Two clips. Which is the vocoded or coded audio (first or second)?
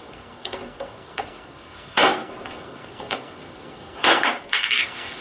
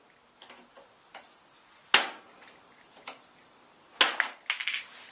first